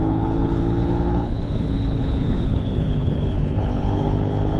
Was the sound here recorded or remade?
remade